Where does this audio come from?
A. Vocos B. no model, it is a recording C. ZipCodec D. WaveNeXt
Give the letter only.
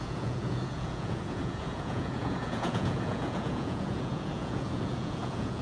A